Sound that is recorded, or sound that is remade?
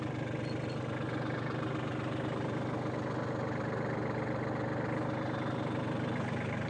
recorded